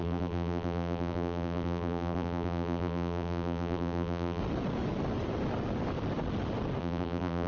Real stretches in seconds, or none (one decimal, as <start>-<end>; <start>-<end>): 4.4-6.8